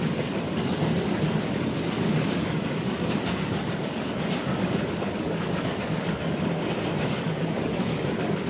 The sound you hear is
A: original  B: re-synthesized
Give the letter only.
B